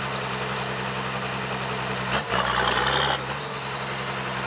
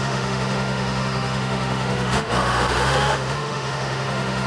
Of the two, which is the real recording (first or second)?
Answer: first